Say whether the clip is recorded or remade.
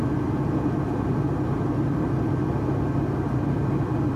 recorded